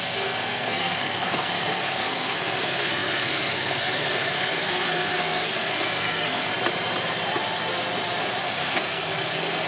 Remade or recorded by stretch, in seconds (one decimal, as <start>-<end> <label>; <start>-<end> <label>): 0.0-6.5 remade; 6.5-8.4 recorded; 8.4-9.7 remade